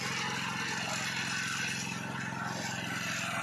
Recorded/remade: recorded